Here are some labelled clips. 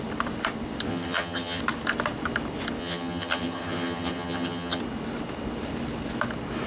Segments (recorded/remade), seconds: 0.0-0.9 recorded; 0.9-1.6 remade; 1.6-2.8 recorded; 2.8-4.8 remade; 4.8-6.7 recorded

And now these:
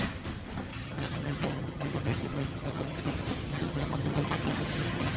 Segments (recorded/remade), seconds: 0.0-0.7 recorded; 0.7-3.1 remade; 3.1-3.5 recorded; 3.5-5.2 remade

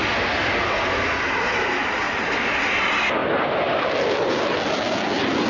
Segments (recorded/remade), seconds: 0.0-5.5 recorded

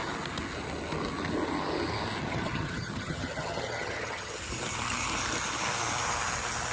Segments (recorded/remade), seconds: 0.0-2.2 recorded; 2.2-4.4 remade; 4.4-6.7 recorded

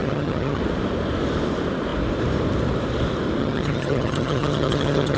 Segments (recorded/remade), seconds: 0.0-0.6 remade; 0.6-3.4 recorded; 3.4-5.2 remade

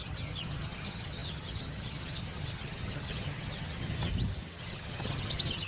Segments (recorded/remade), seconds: 0.0-4.1 remade; 4.1-4.6 recorded; 4.6-5.7 remade

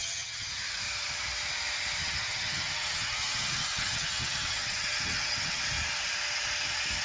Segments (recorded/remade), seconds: 0.0-0.5 remade; 0.5-2.0 recorded; 2.0-5.6 remade; 5.6-7.0 recorded

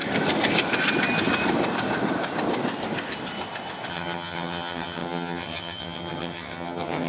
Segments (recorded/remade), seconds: 0.0-3.9 recorded; 3.9-7.1 remade